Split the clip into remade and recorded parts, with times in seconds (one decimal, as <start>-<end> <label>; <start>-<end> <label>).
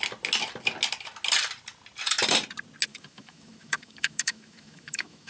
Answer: 0.0-2.9 recorded; 2.9-5.3 remade